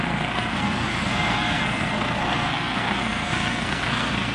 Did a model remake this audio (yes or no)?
yes